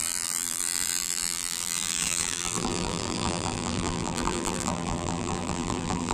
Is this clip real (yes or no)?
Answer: no